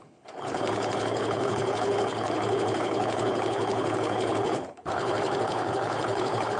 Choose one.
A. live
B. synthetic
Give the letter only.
B